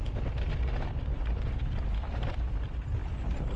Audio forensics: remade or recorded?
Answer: recorded